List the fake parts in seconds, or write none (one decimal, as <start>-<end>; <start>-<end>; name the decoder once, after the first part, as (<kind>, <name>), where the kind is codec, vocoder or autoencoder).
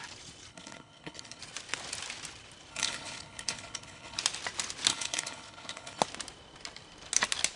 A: 0.5-1.4 (codec, HILCodec); 2.7-4.2; 4.9-6.0